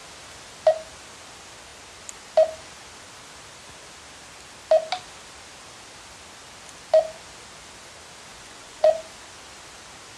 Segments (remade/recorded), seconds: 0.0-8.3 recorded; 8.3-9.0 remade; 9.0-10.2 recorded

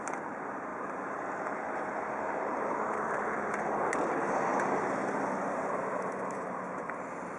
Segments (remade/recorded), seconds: 0.0-0.7 recorded; 0.7-3.6 remade; 3.6-7.4 recorded

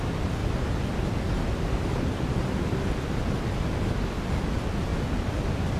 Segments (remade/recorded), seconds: 0.0-5.8 recorded